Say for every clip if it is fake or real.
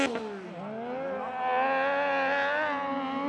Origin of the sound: real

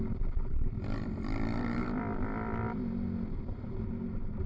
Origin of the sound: real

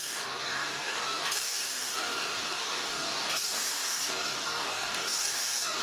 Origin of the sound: fake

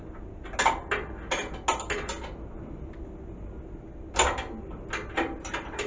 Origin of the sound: real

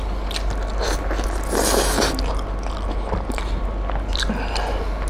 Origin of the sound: real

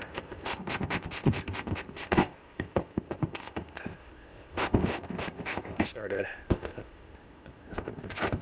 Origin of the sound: fake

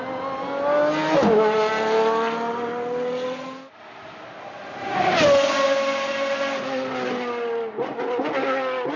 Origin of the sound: real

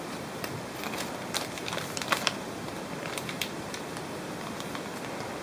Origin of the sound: fake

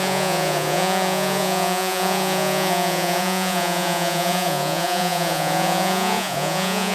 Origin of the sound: fake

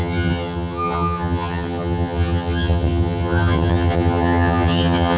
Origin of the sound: fake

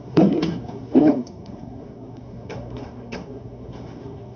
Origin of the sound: fake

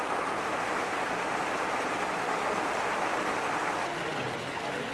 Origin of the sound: real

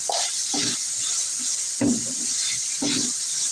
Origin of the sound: real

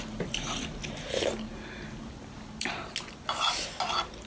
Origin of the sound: real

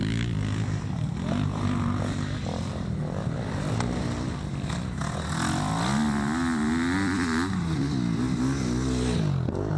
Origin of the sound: real